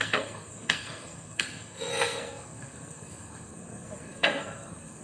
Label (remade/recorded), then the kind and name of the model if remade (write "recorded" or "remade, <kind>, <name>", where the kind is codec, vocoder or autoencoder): remade, codec, SNAC